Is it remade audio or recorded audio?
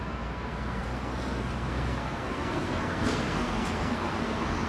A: remade